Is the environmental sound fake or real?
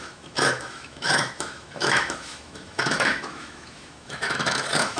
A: fake